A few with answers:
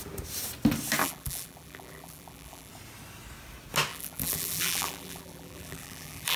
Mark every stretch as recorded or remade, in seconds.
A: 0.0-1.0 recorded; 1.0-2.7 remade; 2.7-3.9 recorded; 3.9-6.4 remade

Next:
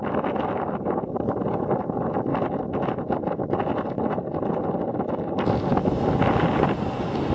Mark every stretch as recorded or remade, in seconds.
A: 0.0-7.3 recorded

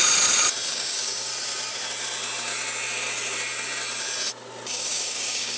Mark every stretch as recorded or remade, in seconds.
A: 0.0-0.7 recorded; 0.7-1.3 remade; 1.3-4.7 recorded; 4.7-5.6 remade

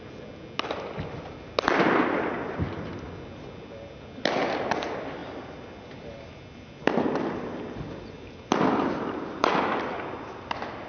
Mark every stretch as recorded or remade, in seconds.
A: 0.0-10.9 recorded

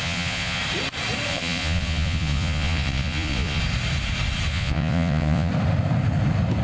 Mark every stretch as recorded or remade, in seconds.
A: 0.0-0.6 remade; 0.6-1.3 recorded; 1.3-3.6 remade; 3.6-4.5 recorded; 4.5-5.5 remade; 5.5-6.6 recorded

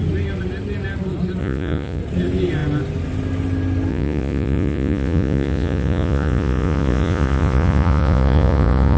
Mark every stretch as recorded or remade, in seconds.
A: 0.0-1.4 recorded; 1.4-2.0 remade; 2.0-3.9 recorded; 3.9-9.0 remade